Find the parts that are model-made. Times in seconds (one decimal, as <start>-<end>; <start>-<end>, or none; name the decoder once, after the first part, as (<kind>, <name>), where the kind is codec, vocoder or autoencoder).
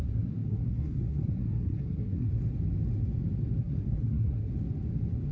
0.0-2.3 (codec, SNAC); 3.6-4.5